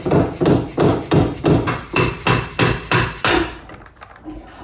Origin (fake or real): real